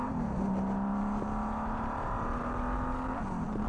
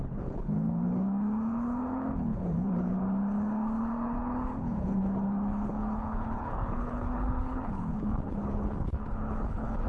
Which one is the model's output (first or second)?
second